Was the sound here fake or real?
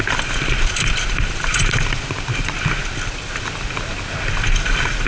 real